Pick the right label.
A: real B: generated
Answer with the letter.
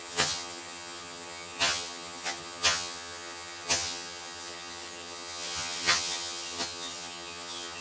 B